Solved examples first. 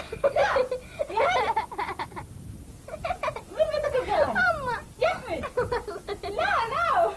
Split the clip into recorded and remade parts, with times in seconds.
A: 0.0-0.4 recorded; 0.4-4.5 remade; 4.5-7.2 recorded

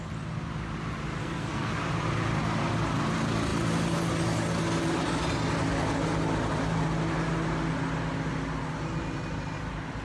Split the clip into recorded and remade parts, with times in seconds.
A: 0.0-1.2 recorded; 1.2-1.7 remade; 1.7-10.0 recorded